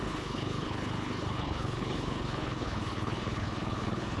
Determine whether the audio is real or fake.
fake